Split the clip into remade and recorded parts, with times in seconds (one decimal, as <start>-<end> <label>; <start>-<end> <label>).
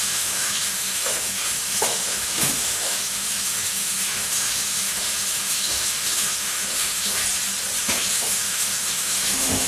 0.0-7.2 remade; 7.2-7.8 recorded; 7.8-9.7 remade